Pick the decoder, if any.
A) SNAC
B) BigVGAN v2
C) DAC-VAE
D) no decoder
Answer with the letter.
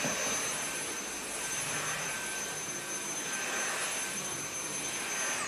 D